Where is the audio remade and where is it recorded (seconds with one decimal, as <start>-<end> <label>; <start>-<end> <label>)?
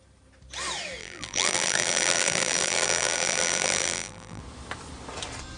0.0-1.0 recorded; 1.0-4.4 remade; 4.4-5.6 recorded